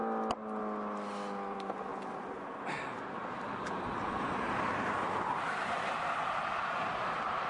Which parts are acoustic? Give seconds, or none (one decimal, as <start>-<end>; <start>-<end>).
0.0-7.5